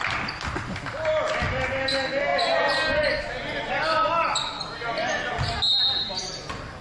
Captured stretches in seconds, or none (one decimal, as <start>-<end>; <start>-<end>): 0.0-6.8